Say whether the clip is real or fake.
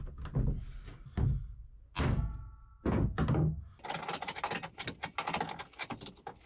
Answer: real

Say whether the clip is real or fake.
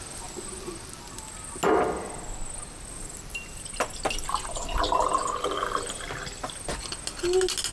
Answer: real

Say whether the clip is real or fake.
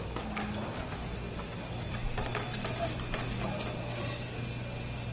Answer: real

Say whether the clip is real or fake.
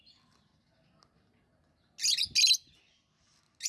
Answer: real